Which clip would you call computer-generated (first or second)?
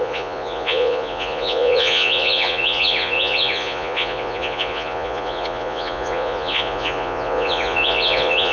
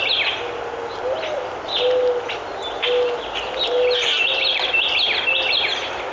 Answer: first